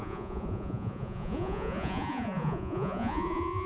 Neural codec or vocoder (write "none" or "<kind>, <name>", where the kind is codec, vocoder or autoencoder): vocoder, Vocos